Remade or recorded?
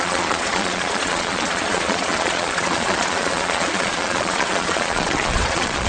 remade